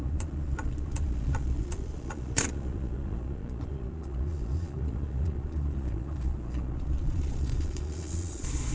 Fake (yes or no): yes